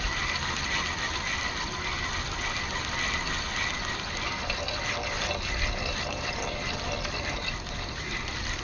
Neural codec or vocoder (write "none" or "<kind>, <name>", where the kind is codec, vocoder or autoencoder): none